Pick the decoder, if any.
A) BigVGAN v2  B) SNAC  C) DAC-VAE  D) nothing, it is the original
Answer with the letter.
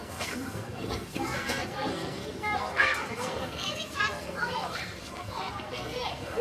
B